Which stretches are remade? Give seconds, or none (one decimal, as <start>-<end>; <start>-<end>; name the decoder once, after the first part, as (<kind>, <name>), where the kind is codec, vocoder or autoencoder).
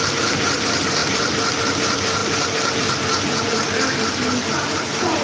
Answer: 1.0-1.6 (vocoder, BigVGAN v2)